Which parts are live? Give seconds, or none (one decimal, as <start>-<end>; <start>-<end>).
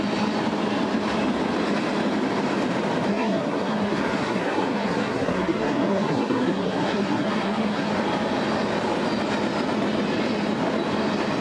0.0-3.1; 7.9-11.4